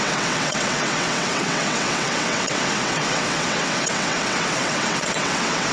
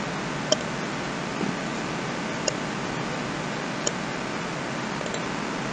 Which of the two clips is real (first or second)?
second